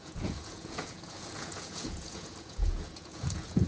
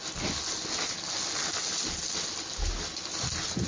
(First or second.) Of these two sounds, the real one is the second